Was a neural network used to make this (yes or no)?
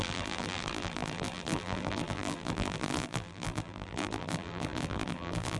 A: yes